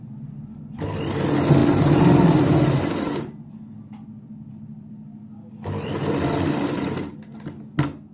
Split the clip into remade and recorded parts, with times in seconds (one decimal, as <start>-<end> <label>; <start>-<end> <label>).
0.0-1.6 recorded; 1.6-3.3 remade; 3.3-8.1 recorded